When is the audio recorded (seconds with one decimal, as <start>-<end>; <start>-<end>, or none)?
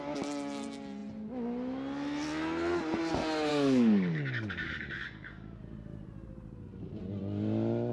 0.0-3.5; 5.6-7.9